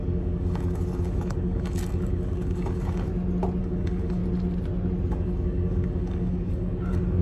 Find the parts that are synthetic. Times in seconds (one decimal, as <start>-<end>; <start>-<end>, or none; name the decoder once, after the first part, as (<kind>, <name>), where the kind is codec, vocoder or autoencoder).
0.0-3.1 (codec, DAC); 3.6-4.2; 5.1-7.2